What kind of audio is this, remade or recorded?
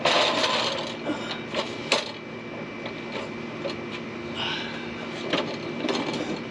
recorded